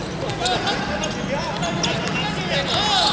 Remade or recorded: recorded